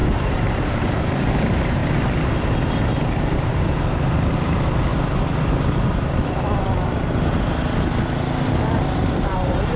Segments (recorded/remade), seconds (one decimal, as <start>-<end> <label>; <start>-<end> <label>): 0.0-1.8 remade; 1.8-3.0 recorded; 3.0-4.9 remade; 4.9-8.6 recorded; 8.6-9.8 remade